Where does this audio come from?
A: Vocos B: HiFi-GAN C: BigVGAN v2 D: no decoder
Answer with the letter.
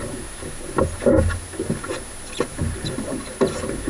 D